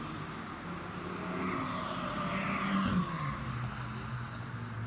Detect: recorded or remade recorded